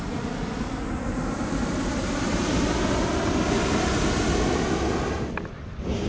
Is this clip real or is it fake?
real